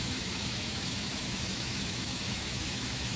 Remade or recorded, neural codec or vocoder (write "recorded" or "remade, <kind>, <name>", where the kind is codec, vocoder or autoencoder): remade, autoencoder, DAC-VAE